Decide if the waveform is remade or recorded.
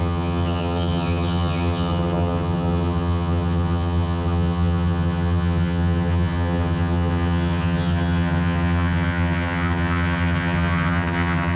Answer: remade